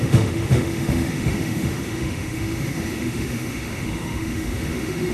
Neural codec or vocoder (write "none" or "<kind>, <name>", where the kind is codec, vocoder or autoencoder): autoencoder, DAC-VAE